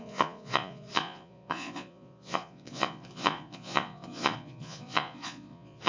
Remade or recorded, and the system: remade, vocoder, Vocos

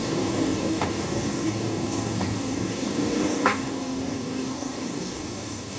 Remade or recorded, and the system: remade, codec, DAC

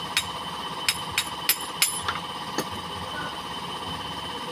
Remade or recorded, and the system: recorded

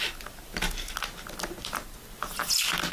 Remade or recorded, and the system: recorded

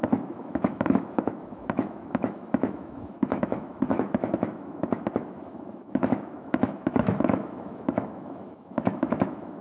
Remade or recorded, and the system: remade, autoencoder, DAC-VAE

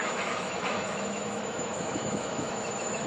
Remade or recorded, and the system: remade, autoencoder, DAC-VAE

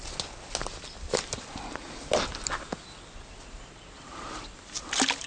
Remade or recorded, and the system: recorded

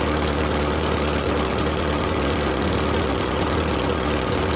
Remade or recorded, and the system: remade, vocoder, Vocos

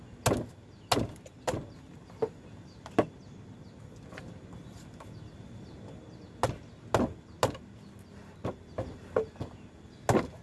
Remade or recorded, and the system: recorded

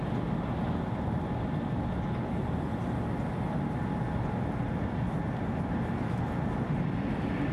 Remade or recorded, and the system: recorded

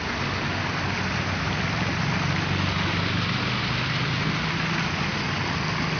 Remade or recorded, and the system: recorded